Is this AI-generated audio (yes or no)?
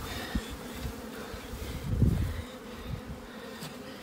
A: yes